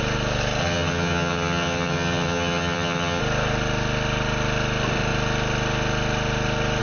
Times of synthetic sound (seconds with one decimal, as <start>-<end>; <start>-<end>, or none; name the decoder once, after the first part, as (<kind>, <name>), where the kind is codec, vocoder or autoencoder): 0.6-3.2 (vocoder, HiFi-GAN)